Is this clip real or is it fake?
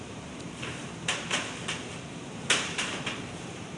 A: fake